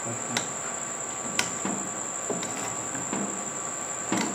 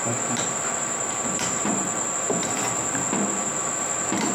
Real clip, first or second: first